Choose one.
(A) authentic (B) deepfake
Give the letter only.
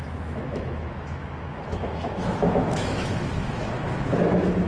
B